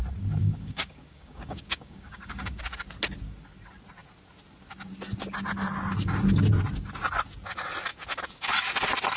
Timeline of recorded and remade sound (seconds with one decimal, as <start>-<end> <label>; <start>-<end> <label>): 0.0-0.4 recorded; 0.4-2.6 remade; 2.6-7.9 recorded; 7.9-8.5 remade; 8.5-9.2 recorded